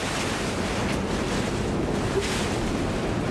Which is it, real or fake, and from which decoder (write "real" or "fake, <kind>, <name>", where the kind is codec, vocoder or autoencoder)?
real